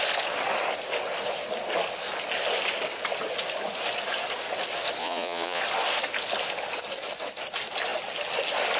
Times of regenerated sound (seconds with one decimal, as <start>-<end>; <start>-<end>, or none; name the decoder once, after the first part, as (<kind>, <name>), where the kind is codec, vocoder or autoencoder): 5.0-5.6 (vocoder, Vocos)